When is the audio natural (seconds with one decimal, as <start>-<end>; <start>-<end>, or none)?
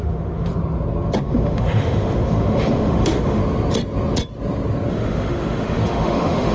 0.5-1.2; 3.4-4.9